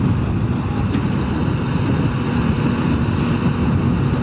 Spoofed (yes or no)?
no